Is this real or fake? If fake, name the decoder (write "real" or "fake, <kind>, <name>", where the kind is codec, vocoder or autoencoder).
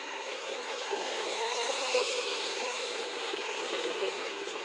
fake, codec, SNAC